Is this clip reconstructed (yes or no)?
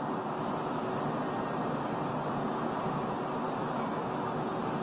no